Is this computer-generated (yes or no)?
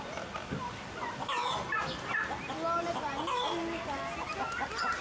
no